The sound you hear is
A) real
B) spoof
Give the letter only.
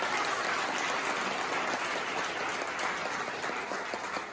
A